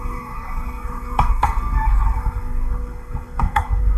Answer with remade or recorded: remade